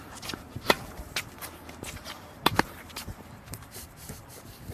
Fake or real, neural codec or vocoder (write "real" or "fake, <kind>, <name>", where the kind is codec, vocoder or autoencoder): fake, vocoder, BigVGAN v2